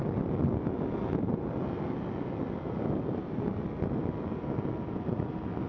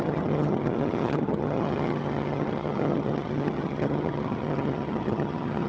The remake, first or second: second